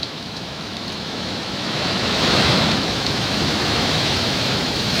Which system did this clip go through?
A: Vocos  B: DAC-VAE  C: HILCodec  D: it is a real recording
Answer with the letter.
B